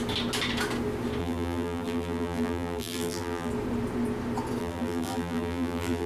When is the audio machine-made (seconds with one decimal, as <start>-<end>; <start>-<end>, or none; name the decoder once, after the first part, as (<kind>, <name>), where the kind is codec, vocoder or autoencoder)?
1.2-3.5 (vocoder, BigVGAN v2); 4.6-6.1